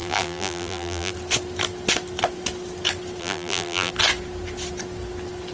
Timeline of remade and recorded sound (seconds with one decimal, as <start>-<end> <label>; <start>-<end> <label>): 0.0-1.1 remade; 1.1-3.2 recorded; 3.2-3.9 remade; 3.9-5.5 recorded

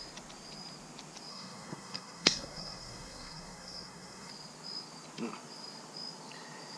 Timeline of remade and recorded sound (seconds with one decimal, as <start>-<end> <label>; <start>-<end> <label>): 0.0-1.3 recorded; 1.3-4.3 remade; 4.3-6.8 recorded

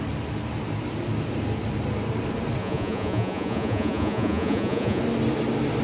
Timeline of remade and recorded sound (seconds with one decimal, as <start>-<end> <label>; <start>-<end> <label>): 0.0-2.6 recorded; 2.6-5.0 remade; 5.0-5.8 recorded